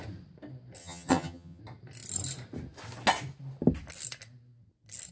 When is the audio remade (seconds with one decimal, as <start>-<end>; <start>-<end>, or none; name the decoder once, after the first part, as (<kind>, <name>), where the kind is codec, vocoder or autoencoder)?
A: 0.8-1.6 (vocoder, HiFi-GAN)